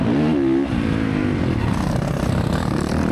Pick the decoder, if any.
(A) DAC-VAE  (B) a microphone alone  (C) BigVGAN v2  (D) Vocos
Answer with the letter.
B